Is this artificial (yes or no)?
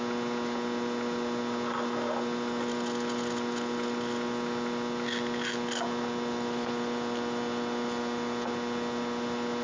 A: no